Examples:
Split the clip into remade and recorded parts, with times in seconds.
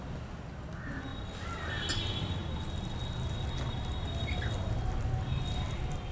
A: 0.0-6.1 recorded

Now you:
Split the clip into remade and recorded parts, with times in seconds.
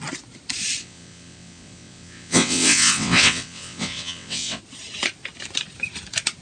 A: 0.0-0.8 recorded; 0.8-4.6 remade; 4.6-6.4 recorded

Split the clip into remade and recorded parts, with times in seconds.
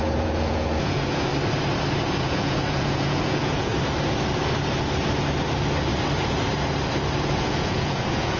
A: 0.0-1.3 remade; 1.3-2.2 recorded; 2.2-3.7 remade; 3.7-7.4 recorded; 7.4-8.4 remade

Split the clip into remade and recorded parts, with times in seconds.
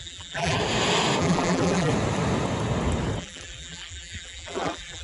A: 0.0-0.6 remade; 0.6-1.2 recorded; 1.2-1.9 remade; 1.9-3.2 recorded; 3.2-5.0 remade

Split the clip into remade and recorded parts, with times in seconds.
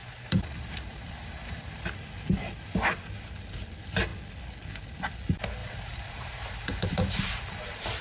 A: 0.0-1.8 remade; 1.8-5.6 recorded; 5.6-8.0 remade